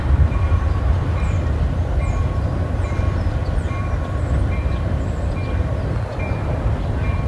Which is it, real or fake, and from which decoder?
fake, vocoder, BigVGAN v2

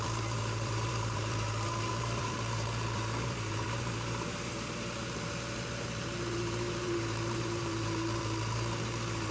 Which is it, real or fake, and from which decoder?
fake, vocoder, BigVGAN v2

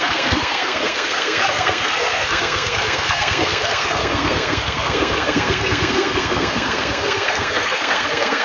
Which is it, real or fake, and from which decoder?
fake, codec, SNAC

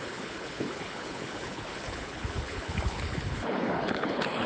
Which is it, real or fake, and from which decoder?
fake, codec, HILCodec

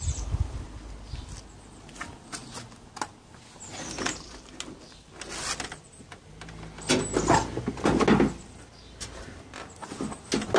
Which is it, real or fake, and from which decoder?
real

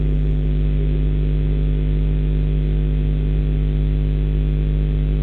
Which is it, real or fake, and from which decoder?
real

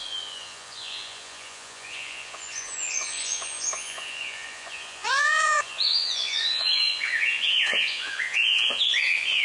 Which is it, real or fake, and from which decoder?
fake, vocoder, Vocos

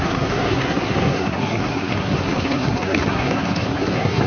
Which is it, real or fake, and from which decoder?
fake, codec, SNAC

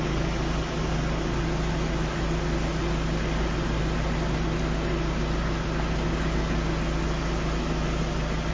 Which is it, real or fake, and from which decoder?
real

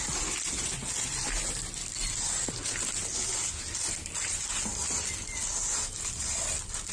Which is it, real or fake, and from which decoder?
real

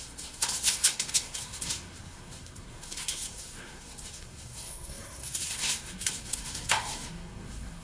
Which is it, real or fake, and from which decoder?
fake, codec, SNAC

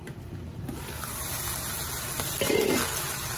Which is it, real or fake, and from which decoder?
real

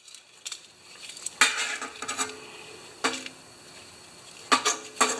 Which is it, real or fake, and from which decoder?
real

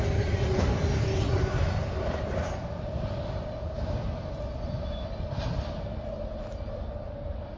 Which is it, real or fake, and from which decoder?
real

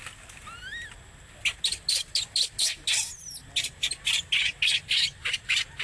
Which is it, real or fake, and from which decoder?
real